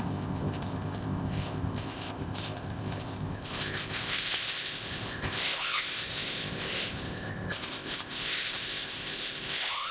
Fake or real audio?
fake